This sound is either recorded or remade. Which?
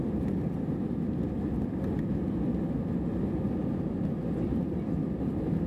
recorded